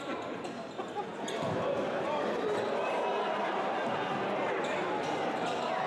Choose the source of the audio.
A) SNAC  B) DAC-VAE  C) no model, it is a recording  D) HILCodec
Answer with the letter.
C